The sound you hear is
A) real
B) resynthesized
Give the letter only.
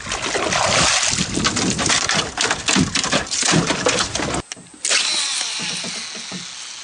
A